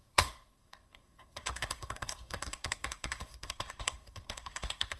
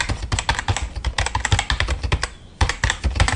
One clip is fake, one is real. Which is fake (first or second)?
first